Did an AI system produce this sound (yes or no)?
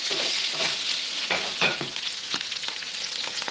yes